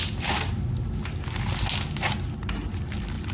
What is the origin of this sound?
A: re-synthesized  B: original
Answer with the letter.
B